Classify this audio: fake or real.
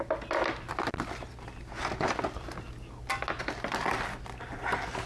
real